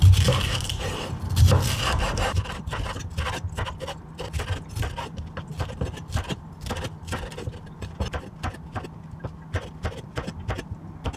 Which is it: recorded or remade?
recorded